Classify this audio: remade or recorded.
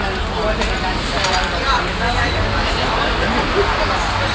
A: recorded